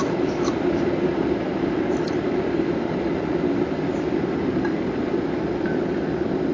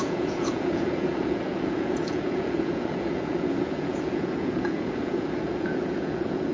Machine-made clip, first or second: second